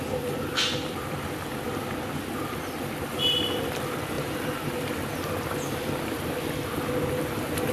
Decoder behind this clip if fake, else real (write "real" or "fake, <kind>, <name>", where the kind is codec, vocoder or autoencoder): real